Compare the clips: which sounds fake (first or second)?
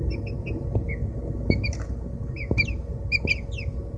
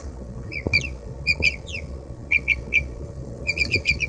second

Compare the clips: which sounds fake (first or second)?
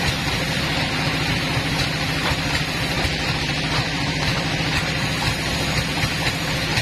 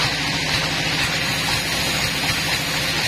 first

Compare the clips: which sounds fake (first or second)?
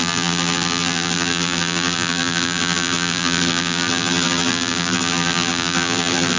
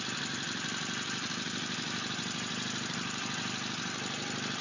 first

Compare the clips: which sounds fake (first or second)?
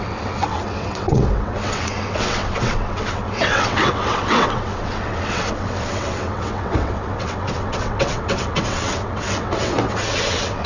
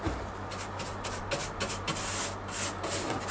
first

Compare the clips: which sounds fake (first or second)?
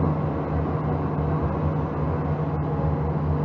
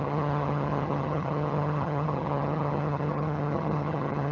second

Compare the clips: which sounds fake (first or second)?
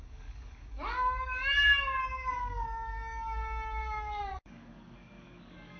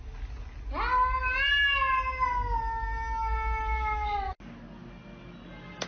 first